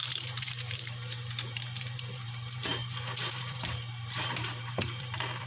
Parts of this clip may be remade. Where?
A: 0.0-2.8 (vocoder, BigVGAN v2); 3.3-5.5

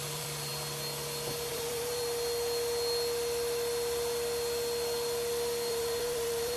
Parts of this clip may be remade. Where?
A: 0.0-0.5 (vocoder, BigVGAN v2); 1.5-2.0; 5.7-6.6

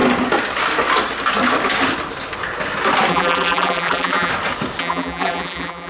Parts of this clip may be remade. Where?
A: 3.1-4.3 (vocoder, BigVGAN v2); 4.8-5.9

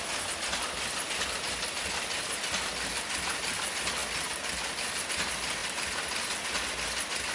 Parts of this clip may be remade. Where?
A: none

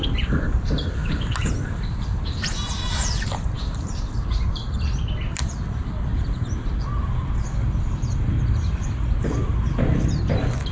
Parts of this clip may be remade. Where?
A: 0.0-1.0 (vocoder, BigVGAN v2); 2.8-6.1